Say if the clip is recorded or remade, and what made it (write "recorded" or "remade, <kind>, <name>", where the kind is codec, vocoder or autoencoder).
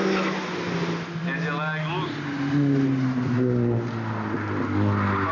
recorded